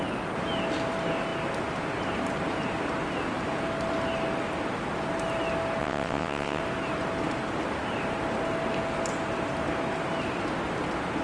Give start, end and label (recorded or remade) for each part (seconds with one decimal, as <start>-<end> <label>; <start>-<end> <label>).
0.0-5.8 recorded; 5.8-6.6 remade; 6.6-11.2 recorded